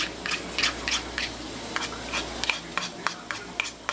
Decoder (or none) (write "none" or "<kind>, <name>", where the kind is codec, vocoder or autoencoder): none